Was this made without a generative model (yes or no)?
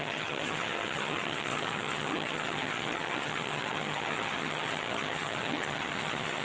no